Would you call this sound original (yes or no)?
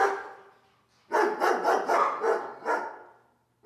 yes